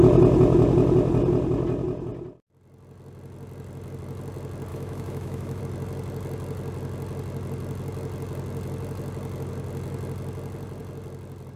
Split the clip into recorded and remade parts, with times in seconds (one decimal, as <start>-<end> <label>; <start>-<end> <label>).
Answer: 0.0-4.7 recorded; 4.7-5.6 remade; 5.6-11.6 recorded